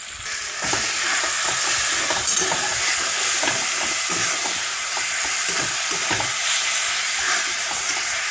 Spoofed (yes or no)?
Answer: no